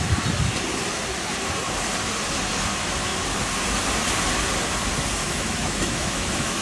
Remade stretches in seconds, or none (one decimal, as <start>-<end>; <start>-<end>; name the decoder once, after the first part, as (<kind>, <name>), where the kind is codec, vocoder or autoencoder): 5.2-6.6 (autoencoder, DAC-VAE)